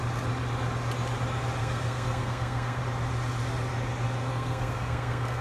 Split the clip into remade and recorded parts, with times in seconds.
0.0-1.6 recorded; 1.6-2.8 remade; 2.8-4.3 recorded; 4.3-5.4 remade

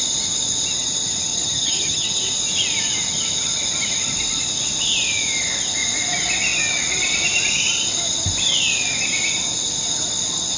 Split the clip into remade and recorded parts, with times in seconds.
0.0-1.3 recorded; 1.3-2.2 remade; 2.2-10.6 recorded

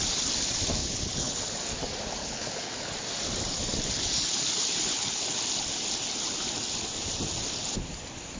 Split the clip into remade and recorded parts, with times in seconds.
0.0-0.8 recorded; 0.8-1.4 remade; 1.4-2.2 recorded; 2.2-2.9 remade; 2.9-4.9 recorded; 4.9-5.4 remade; 5.4-8.4 recorded